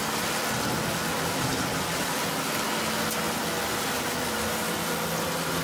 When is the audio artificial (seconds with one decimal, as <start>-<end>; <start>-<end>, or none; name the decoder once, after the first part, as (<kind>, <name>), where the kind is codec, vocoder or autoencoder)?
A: none